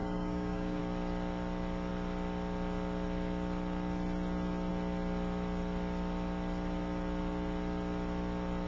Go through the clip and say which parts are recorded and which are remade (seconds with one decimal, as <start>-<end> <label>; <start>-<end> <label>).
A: 0.0-0.8 remade; 0.8-8.7 recorded